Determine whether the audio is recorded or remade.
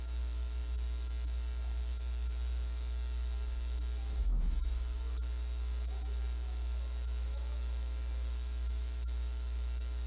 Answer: remade